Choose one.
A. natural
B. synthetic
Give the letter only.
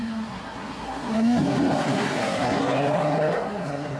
B